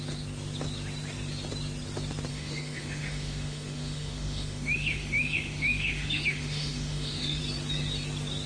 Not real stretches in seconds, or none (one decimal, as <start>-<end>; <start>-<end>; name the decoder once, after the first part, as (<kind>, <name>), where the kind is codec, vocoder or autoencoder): 2.3-7.4 (autoencoder, DAC-VAE)